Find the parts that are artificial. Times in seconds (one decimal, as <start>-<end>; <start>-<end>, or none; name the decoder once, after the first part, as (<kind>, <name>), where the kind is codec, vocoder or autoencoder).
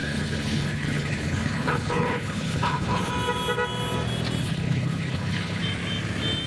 0.0-3.1 (codec, HILCodec); 4.4-5.6